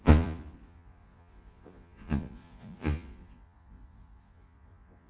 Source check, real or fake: fake